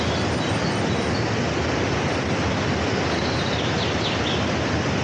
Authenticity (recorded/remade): recorded